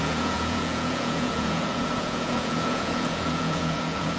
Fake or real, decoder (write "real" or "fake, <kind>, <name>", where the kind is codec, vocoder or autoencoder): fake, vocoder, Vocos